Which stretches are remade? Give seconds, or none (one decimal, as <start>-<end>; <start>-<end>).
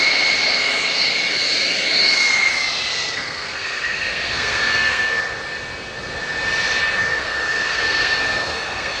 2.9-5.2; 7.1-9.0